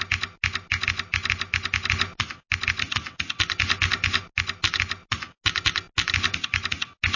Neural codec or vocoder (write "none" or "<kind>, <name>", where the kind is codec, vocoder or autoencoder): none